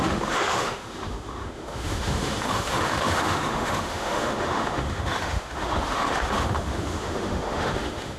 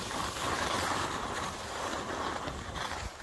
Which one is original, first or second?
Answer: second